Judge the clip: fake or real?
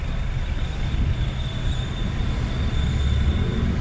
fake